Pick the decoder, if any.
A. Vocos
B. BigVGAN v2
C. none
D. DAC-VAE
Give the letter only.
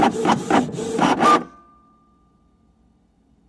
C